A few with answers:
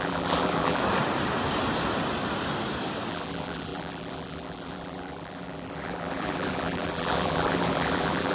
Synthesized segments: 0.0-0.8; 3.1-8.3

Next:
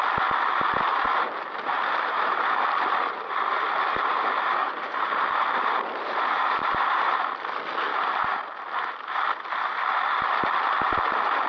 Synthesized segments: 0.9-3.6; 4.6-7.2; 7.9-9.0

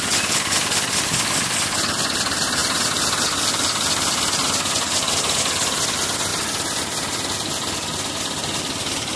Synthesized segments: none

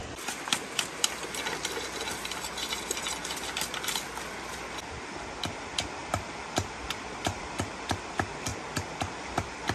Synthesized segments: 0.0-0.6; 5.5-6.0; 6.7-8.5; 9.0-9.7

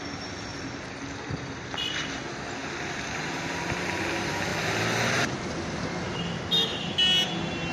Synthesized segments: 0.5-1.3; 2.6-3.4; 4.5-6.0

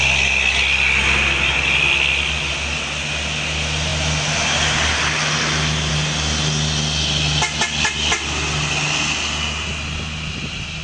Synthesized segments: none

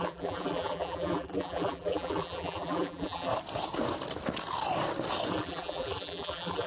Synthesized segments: 0.0-3.3; 5.3-6.7